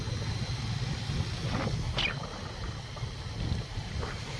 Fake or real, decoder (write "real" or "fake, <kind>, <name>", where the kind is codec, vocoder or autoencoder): real